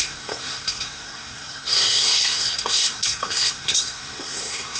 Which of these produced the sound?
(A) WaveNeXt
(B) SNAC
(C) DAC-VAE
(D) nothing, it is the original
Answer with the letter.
B